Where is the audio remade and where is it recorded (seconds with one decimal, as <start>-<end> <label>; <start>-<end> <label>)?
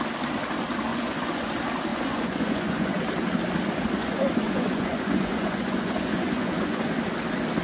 0.0-0.9 recorded; 0.9-1.5 remade; 1.5-1.9 recorded; 1.9-3.0 remade; 3.0-4.0 recorded; 4.0-6.9 remade; 6.9-7.6 recorded